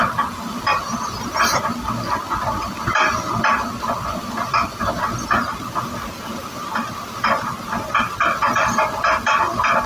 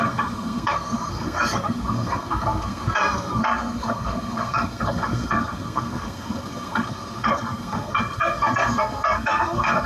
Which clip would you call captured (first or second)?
first